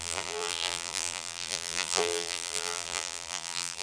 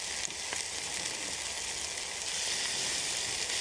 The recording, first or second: second